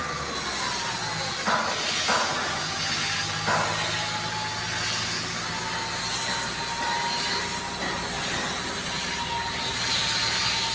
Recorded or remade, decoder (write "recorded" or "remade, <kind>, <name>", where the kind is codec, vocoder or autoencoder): recorded